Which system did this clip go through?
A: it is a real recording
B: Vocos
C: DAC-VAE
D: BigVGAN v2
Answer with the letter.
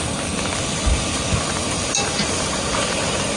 A